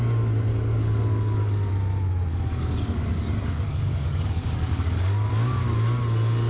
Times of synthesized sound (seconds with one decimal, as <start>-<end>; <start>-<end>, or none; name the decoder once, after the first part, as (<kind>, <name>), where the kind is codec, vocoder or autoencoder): 0.5-1.7 (codec, DAC); 2.3-5.3